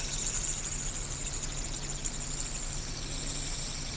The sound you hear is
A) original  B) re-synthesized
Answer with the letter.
A